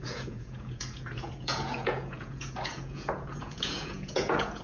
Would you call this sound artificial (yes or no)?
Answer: yes